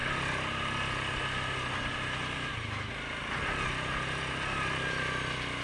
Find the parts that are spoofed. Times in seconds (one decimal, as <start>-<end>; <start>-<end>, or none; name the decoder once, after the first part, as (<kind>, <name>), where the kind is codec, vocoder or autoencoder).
none